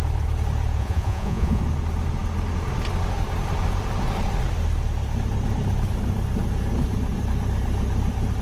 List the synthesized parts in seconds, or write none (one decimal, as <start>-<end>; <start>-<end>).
0.8-1.6